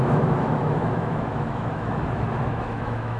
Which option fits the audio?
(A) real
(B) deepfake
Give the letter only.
B